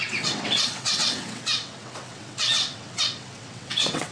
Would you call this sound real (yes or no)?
no